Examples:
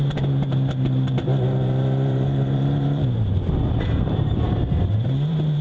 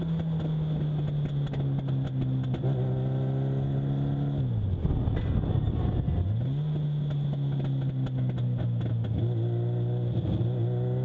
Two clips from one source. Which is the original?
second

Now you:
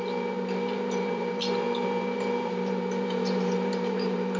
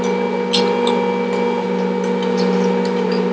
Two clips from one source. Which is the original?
second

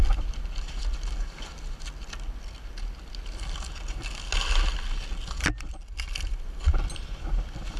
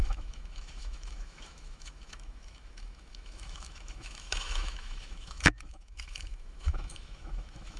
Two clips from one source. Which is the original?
first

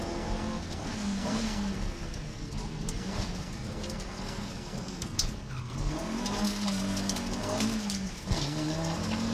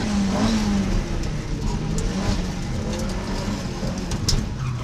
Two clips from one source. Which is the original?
second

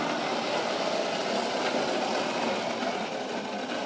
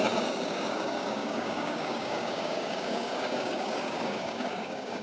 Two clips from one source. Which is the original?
first